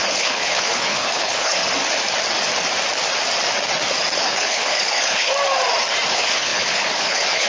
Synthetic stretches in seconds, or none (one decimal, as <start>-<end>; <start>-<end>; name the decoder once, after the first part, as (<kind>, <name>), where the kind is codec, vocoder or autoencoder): 0.0-1.6 (codec, HILCodec); 4.2-5.3; 6.1-7.5